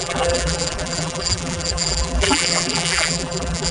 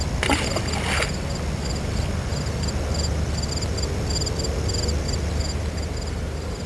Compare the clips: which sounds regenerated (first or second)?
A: first